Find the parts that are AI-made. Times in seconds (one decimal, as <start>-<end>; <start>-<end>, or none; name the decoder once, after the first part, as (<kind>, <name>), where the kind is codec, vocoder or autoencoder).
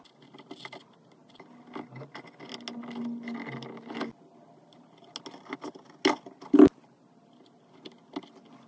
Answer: none